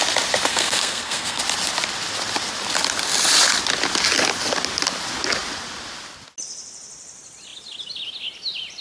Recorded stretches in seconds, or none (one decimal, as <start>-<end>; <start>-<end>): 0.0-0.5; 1.4-8.8